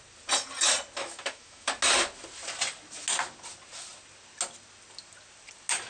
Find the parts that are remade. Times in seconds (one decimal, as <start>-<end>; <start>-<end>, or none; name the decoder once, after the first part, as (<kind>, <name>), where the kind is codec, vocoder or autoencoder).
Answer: 1.0-1.7 (autoencoder, DAC-VAE)